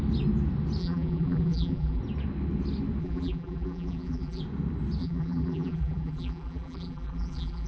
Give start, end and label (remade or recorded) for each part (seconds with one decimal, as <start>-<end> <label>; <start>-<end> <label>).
0.0-0.8 recorded; 0.8-2.0 remade; 2.0-3.0 recorded; 3.0-4.4 remade; 4.4-5.0 recorded; 5.0-7.7 remade